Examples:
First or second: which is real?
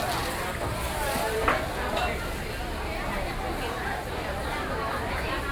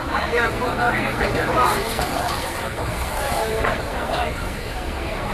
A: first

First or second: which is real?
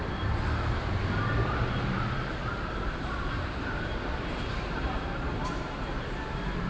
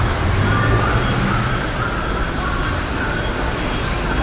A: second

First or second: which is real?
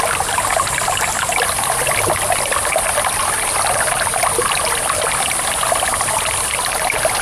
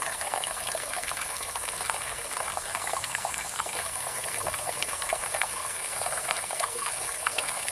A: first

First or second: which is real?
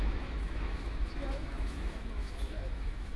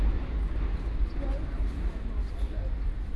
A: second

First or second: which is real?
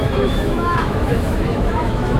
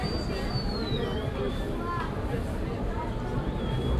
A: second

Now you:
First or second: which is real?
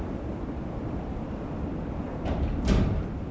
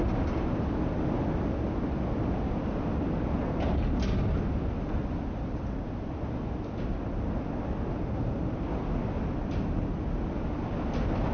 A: second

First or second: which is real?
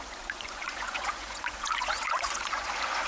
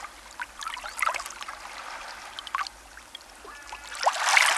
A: second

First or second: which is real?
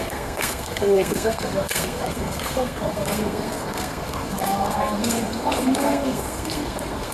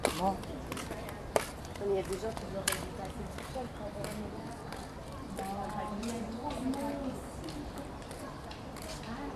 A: second